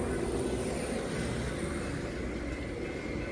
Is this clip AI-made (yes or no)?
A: no